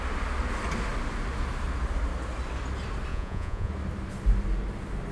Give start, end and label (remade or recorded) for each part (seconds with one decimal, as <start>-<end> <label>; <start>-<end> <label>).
0.0-3.1 recorded; 3.1-3.7 remade; 3.7-5.1 recorded